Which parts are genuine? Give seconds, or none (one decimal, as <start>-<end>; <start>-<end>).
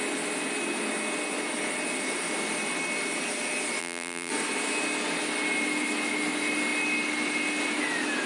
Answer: 0.0-3.8; 4.3-8.3